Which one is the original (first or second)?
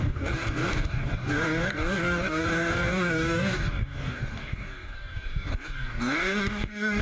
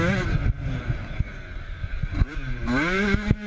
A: second